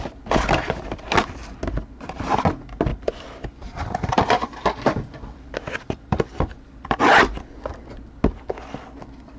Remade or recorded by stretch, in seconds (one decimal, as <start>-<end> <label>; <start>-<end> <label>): 0.0-2.9 recorded; 2.9-7.0 remade; 7.0-9.4 recorded